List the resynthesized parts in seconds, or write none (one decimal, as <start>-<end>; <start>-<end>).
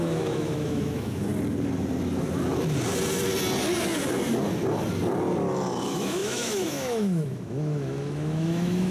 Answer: 0.0-1.3; 5.8-8.9